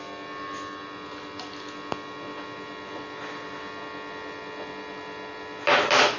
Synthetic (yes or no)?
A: no